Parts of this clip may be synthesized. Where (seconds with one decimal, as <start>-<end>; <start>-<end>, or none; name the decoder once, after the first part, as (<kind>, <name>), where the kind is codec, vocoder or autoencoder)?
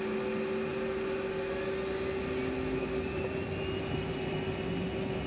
none